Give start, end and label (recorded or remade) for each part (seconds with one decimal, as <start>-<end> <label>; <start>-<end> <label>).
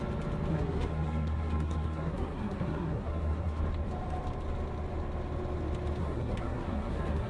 0.0-0.5 recorded; 0.5-3.6 remade; 3.6-6.0 recorded; 6.0-7.3 remade